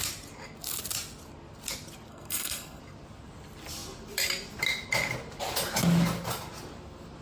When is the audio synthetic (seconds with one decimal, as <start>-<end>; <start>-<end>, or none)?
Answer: 2.1-2.8